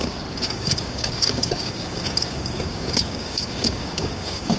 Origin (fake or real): fake